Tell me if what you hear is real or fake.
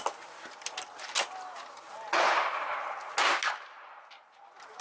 real